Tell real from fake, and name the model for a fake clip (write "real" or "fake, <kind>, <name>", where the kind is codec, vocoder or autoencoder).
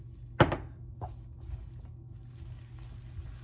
real